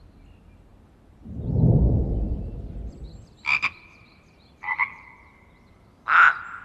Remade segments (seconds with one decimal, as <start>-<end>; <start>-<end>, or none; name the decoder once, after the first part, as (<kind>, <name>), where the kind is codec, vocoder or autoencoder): 0.7-4.7 (vocoder, BigVGAN v2)